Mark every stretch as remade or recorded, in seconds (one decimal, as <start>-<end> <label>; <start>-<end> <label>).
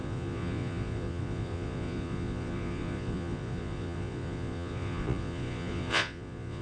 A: 0.0-6.6 remade